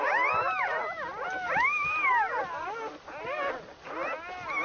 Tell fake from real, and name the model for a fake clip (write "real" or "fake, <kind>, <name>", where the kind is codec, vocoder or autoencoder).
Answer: real